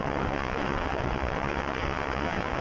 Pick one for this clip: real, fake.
fake